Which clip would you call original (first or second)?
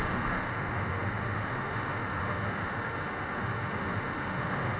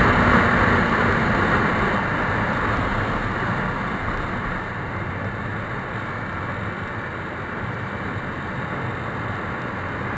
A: second